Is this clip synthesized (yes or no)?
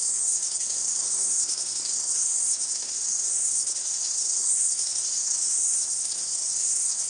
yes